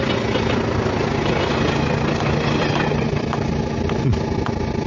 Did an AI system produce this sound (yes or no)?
no